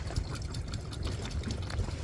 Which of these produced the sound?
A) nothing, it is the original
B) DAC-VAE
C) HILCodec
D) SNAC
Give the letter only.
A